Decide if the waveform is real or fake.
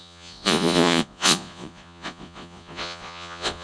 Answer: fake